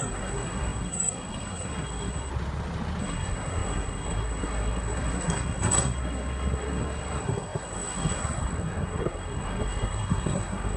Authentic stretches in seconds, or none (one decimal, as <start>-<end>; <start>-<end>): 2.3-3.0